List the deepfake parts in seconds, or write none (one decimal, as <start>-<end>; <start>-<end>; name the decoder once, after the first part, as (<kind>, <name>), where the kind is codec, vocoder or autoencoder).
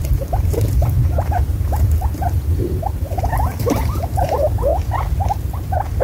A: 0.0-4.7 (vocoder, BigVGAN v2)